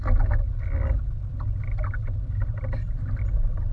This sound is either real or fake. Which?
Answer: real